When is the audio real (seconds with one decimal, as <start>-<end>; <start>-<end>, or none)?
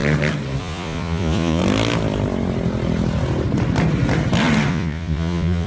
0.0-0.6; 1.6-4.7